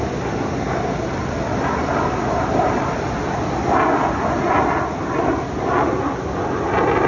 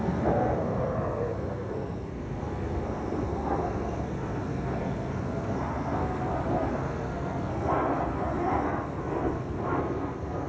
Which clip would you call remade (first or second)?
second